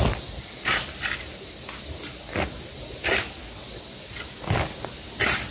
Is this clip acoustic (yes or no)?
yes